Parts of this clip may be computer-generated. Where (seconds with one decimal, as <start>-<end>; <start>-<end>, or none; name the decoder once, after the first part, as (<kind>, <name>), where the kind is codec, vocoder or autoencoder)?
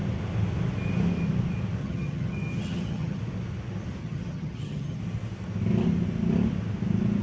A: 1.8-3.2 (vocoder, HiFi-GAN); 4.0-5.0